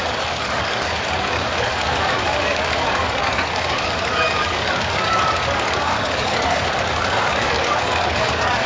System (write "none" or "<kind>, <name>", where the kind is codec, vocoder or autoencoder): codec, DAC